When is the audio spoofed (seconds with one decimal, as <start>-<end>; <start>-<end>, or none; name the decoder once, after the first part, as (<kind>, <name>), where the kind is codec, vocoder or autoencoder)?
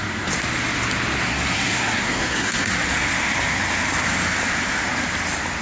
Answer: 1.3-2.7 (codec, SNAC)